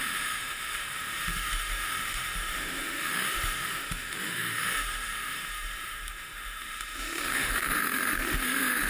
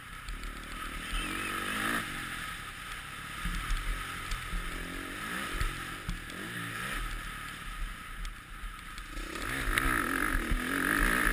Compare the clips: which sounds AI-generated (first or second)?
first